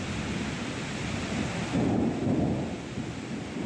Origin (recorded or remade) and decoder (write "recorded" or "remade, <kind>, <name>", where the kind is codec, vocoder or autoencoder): recorded